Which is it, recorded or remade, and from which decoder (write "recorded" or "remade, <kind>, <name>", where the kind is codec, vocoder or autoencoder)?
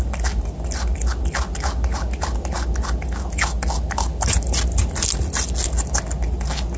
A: recorded